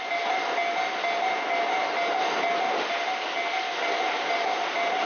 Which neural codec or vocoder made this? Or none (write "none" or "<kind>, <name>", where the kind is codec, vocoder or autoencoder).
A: none